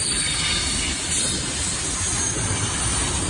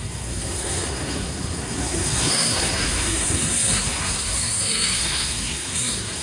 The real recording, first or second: first